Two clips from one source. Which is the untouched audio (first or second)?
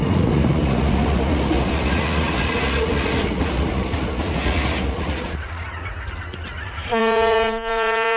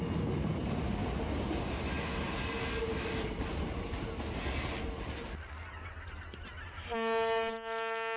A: second